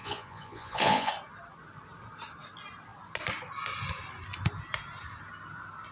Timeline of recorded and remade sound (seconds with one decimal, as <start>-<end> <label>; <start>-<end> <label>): 0.0-1.1 remade; 1.1-5.9 recorded